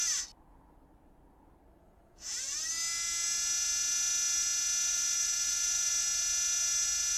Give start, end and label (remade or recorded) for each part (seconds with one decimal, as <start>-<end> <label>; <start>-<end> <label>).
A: 0.0-1.8 recorded; 1.8-2.7 remade; 2.7-4.9 recorded; 4.9-5.9 remade; 5.9-7.2 recorded